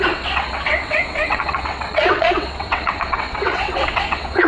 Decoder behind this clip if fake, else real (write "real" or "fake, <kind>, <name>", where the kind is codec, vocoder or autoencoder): fake, vocoder, WaveNeXt